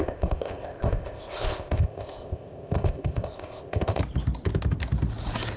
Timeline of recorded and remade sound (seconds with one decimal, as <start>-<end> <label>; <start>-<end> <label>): 0.0-4.0 remade; 4.0-5.6 recorded